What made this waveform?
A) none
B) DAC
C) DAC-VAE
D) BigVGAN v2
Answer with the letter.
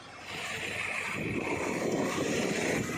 D